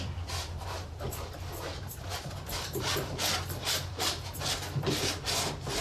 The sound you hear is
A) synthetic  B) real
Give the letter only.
A